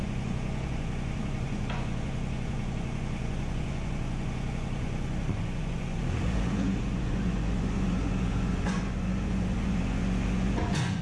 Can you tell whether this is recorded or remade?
remade